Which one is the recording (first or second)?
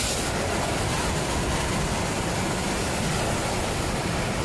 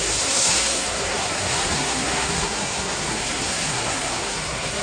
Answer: first